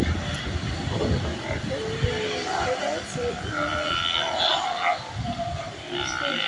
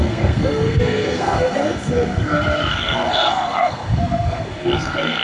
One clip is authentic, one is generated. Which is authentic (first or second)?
first